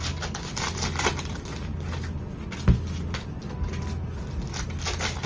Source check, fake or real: real